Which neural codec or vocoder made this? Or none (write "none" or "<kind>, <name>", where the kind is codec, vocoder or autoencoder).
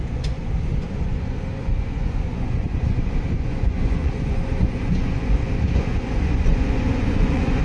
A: vocoder, Vocos